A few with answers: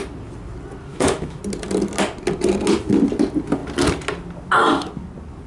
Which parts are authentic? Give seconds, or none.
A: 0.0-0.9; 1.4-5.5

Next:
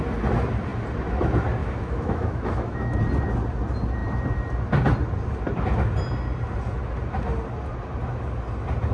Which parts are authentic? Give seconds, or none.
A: 0.0-1.6; 3.0-8.9